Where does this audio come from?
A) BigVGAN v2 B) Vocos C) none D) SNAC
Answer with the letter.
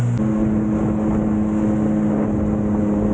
C